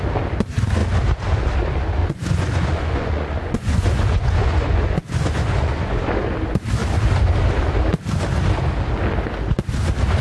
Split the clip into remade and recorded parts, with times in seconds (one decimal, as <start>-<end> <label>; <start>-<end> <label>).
0.0-2.0 recorded; 2.0-6.2 remade; 6.2-10.2 recorded